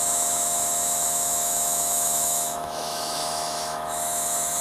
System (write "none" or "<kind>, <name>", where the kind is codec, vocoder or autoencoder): autoencoder, DAC-VAE